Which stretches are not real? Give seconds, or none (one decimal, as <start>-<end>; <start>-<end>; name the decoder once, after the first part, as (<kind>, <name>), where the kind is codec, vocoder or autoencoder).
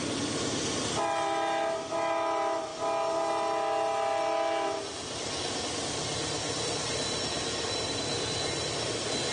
none